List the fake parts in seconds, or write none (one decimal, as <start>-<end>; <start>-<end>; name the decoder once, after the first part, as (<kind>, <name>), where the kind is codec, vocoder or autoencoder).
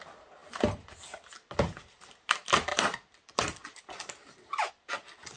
none